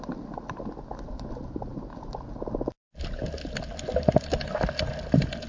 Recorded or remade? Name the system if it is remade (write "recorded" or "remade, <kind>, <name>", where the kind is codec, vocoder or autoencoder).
recorded